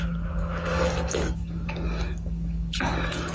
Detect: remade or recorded remade